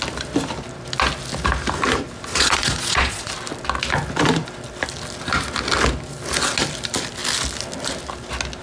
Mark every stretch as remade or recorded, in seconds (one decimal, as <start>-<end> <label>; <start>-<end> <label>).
0.0-2.3 recorded; 2.3-3.3 remade; 3.3-8.6 recorded